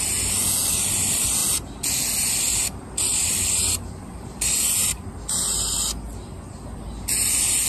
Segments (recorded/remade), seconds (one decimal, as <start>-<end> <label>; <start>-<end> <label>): 0.0-7.7 recorded